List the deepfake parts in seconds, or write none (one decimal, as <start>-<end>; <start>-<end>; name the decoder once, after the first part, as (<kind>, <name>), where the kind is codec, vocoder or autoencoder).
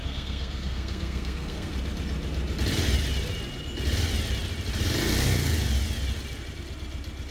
0.0-1.7 (codec, SNAC)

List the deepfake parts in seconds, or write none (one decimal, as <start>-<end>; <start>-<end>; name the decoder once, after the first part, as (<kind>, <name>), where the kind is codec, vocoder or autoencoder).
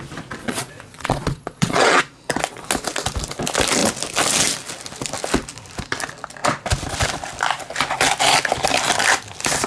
0.4-2.0 (vocoder, Vocos)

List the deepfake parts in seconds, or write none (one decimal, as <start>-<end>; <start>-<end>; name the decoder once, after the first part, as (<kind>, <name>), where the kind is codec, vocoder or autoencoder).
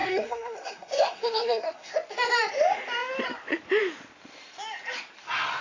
0.0-1.9 (codec, SNAC)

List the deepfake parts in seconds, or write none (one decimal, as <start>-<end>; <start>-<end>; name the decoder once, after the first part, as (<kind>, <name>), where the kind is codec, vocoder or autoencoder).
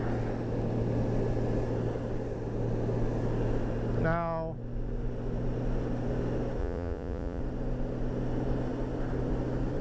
6.6-7.4 (vocoder, Vocos)